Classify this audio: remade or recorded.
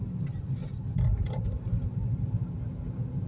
recorded